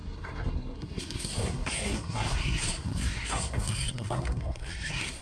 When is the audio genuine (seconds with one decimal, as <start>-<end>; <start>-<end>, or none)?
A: none